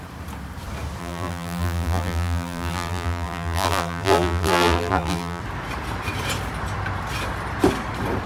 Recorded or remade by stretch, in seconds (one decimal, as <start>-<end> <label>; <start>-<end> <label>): 0.0-1.0 recorded; 1.0-5.4 remade; 5.4-8.3 recorded